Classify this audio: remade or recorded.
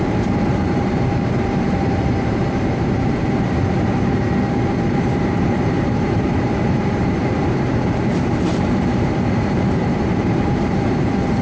remade